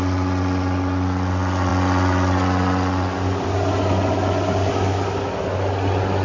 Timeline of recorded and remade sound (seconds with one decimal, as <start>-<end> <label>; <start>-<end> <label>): 0.0-6.2 recorded